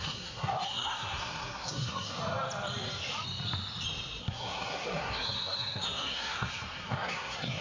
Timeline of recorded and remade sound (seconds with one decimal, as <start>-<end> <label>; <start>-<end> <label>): 0.0-2.2 remade; 2.2-4.2 recorded; 4.2-7.6 remade